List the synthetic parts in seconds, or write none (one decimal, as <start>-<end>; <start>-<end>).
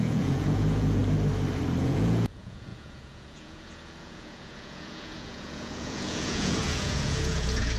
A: 0.0-1.0; 1.8-7.8